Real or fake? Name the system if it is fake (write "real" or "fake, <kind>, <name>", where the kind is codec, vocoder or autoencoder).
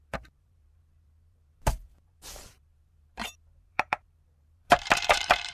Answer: fake, vocoder, BigVGAN v2